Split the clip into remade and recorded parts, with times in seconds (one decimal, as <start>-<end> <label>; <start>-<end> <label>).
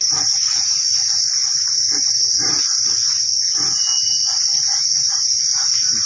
0.0-6.1 recorded